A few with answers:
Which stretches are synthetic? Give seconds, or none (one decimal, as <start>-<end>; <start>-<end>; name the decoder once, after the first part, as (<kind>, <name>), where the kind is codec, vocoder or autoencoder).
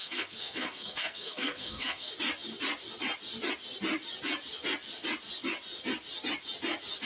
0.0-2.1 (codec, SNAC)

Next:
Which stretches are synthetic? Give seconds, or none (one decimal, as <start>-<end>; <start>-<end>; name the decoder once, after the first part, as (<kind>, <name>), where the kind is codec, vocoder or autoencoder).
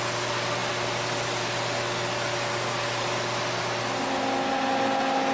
none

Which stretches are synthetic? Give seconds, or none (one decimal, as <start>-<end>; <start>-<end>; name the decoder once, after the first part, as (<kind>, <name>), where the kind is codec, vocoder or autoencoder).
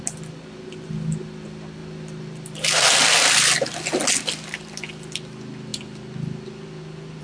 none